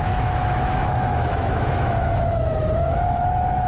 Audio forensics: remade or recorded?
remade